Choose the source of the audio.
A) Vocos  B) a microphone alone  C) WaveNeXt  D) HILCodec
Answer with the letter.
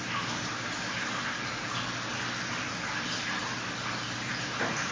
B